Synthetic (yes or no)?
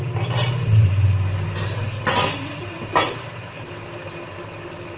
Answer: no